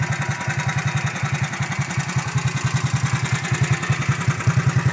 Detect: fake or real real